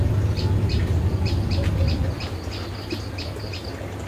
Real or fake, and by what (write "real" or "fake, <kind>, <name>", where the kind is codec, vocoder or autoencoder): real